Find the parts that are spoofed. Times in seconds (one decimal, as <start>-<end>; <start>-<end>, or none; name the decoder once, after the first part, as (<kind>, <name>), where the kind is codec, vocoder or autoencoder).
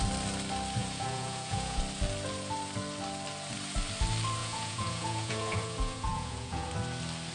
0.8-1.8 (vocoder, Vocos); 4.4-6.7